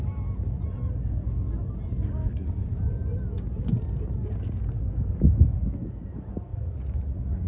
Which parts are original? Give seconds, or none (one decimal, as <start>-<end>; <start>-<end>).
0.0-6.5